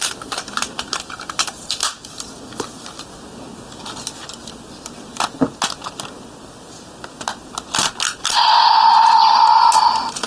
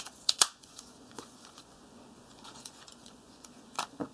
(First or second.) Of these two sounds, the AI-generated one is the second